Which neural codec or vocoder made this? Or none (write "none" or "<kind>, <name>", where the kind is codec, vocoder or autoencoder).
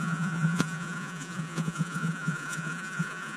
vocoder, Vocos